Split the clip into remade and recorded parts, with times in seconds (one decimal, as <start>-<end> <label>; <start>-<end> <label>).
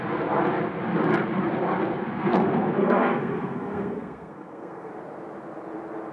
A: 0.0-2.1 recorded; 2.1-4.9 remade; 4.9-6.1 recorded